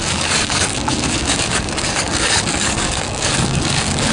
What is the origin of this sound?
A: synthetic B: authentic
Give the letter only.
A